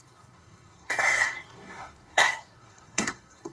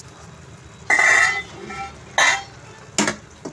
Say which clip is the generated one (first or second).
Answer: first